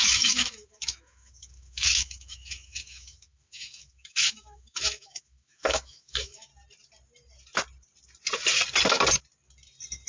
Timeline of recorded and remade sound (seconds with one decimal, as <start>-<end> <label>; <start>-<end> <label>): 0.0-6.5 remade; 6.5-10.1 recorded